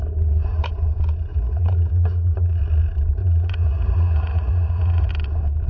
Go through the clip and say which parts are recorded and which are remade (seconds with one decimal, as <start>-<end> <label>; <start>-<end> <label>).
0.0-1.3 recorded; 1.3-2.6 remade; 2.6-3.2 recorded; 3.2-5.1 remade; 5.1-5.7 recorded